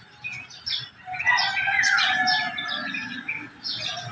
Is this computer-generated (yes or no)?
no